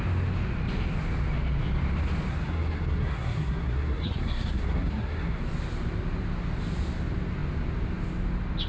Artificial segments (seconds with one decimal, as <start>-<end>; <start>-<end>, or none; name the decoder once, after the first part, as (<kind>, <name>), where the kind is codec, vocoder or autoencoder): 2.3-5.4 (codec, SNAC)